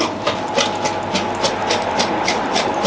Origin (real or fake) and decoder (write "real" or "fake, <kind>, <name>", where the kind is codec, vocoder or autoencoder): real